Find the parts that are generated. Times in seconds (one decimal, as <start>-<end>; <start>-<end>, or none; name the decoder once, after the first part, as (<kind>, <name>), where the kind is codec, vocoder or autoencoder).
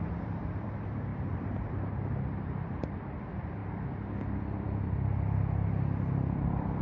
0.0-3.6 (vocoder, BigVGAN v2); 4.3-6.8